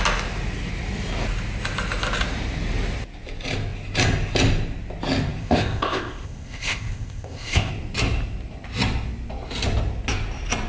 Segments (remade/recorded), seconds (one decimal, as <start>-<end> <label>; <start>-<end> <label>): 0.0-5.4 recorded; 5.4-7.7 remade; 7.7-10.7 recorded